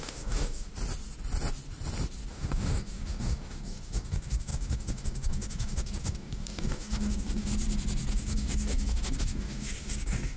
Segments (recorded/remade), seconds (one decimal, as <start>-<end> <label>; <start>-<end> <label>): 0.0-0.7 remade; 0.7-2.3 recorded; 2.3-7.5 remade; 7.5-8.1 recorded; 8.1-10.4 remade

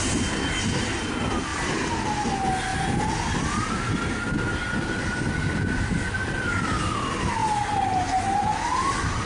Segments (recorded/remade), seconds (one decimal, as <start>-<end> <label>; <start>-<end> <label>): 0.0-9.3 recorded

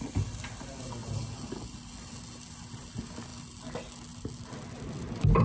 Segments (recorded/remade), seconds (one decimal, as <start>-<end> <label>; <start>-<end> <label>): 0.0-5.4 recorded

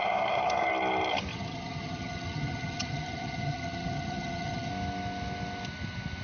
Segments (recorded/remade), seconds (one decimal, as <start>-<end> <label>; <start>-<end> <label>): 0.0-1.3 recorded; 1.3-4.7 remade; 4.7-6.2 recorded